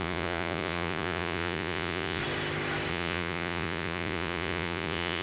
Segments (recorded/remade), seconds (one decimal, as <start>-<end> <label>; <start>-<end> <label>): 0.0-2.2 remade; 2.2-2.9 recorded; 2.9-5.2 remade

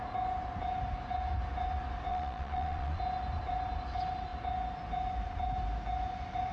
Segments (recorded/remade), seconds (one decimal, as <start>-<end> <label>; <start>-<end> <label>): 0.0-2.1 recorded; 2.1-3.0 remade; 3.0-6.5 recorded

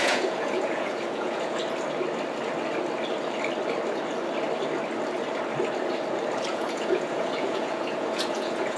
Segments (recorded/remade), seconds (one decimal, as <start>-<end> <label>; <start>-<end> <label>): 0.0-1.6 remade; 1.6-6.5 recorded; 6.5-8.8 remade

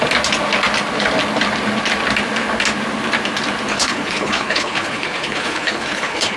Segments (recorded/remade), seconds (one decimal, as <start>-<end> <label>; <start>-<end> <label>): 0.0-3.7 recorded; 3.7-6.4 remade

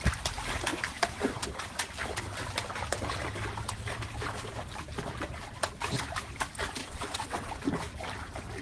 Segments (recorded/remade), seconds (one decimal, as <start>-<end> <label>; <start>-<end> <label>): 0.0-6.8 recorded; 6.8-7.5 remade; 7.5-8.6 recorded

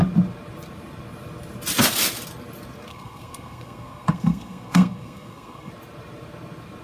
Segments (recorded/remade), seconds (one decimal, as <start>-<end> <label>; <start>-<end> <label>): 0.0-2.9 recorded; 2.9-5.7 remade; 5.7-6.8 recorded

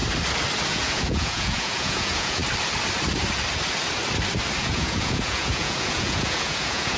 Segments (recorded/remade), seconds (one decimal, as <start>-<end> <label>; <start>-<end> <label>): 0.0-0.7 recorded; 0.7-2.4 remade; 2.4-4.6 recorded; 4.6-7.0 remade